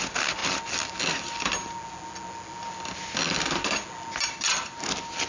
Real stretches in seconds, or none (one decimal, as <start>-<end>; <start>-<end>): 0.0-5.3